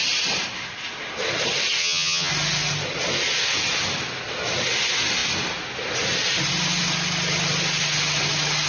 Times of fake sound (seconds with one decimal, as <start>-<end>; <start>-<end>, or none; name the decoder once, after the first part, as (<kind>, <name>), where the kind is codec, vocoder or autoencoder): 1.8-2.3 (vocoder, HiFi-GAN)